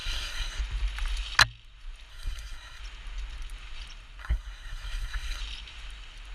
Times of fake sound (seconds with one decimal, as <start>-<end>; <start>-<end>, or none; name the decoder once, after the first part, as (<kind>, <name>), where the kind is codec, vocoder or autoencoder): 0.0-0.6 (codec, SNAC); 2.1-2.8; 4.2-5.4